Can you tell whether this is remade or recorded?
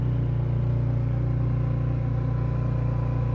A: recorded